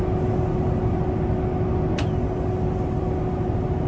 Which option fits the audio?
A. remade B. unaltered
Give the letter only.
B